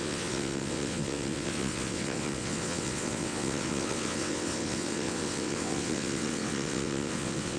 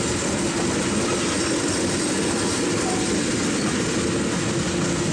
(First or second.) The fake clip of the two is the first